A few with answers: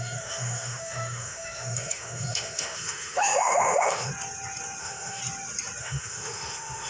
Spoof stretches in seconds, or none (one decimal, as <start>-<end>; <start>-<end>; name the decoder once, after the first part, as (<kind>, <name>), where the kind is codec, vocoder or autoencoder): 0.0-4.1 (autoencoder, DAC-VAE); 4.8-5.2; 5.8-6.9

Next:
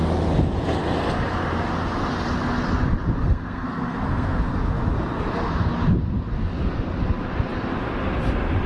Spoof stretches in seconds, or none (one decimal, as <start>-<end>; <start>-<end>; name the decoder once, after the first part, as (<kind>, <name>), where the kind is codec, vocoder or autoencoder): 3.2-4.4 (codec, SNAC)

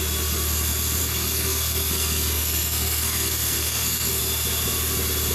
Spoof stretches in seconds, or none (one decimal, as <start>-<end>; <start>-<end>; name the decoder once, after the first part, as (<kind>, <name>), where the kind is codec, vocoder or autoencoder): 1.0-4.2 (codec, SNAC)